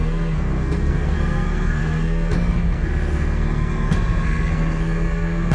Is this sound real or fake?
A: fake